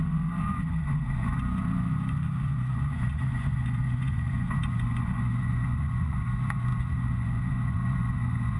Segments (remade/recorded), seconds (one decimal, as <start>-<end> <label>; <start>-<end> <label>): 0.0-8.6 remade

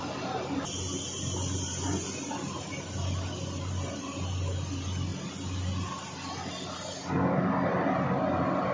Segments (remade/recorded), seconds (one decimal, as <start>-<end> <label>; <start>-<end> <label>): 0.0-8.7 recorded

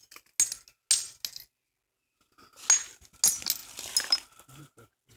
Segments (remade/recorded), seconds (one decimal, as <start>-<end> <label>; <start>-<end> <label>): 0.0-5.2 recorded

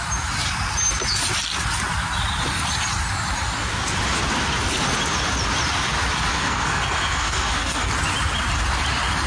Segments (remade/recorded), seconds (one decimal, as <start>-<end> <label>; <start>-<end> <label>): 0.0-6.3 recorded; 6.3-7.9 remade; 7.9-9.3 recorded

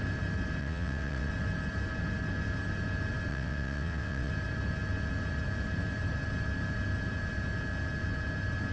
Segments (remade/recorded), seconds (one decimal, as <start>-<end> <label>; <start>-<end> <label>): 0.0-0.6 recorded; 0.6-1.3 remade; 1.3-3.3 recorded; 3.3-4.3 remade; 4.3-8.7 recorded

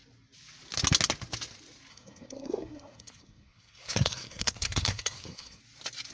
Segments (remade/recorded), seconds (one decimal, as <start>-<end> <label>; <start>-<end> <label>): 0.0-1.9 recorded; 1.9-5.6 remade; 5.6-6.1 recorded

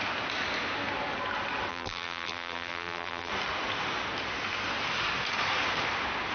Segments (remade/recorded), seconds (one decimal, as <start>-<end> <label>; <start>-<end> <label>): 0.0-1.7 recorded; 1.7-3.3 remade; 3.3-6.3 recorded